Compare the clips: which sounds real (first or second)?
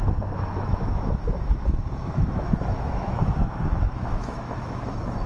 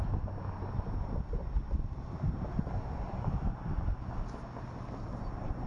second